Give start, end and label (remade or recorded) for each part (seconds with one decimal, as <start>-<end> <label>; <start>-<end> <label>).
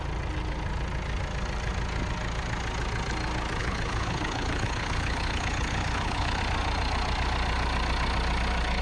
0.0-3.6 recorded; 3.6-6.4 remade; 6.4-8.8 recorded